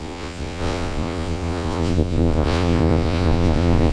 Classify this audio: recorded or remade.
remade